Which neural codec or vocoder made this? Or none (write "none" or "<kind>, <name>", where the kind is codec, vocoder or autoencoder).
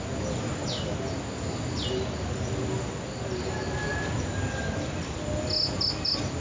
none